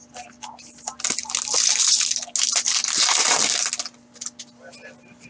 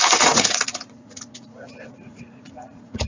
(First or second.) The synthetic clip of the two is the second